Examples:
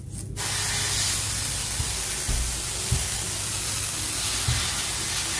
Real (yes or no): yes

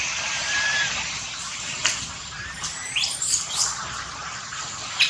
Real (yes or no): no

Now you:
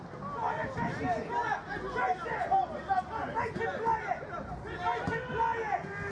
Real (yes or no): yes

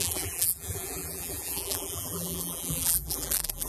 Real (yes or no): no